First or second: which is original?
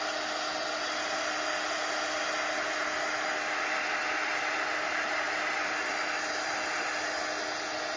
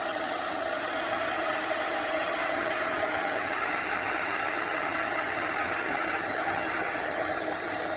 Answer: first